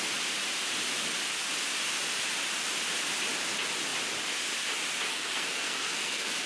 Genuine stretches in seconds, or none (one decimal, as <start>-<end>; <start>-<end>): 0.0-5.1